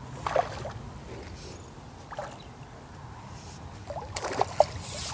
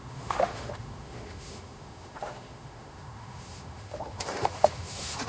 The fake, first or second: second